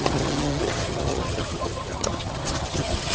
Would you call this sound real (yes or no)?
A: no